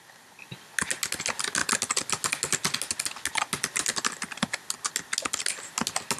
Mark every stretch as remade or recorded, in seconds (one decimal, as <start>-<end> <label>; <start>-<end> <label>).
0.0-6.2 recorded